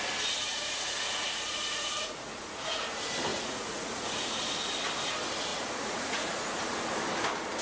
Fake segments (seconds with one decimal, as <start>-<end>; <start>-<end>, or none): 0.5-2.8; 3.3-4.4; 5.5-6.5